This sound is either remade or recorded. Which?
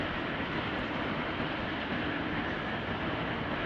recorded